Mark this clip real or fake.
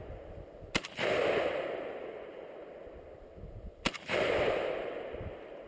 real